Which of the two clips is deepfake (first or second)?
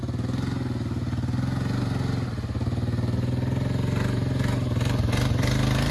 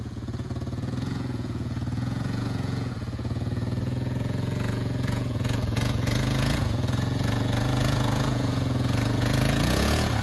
second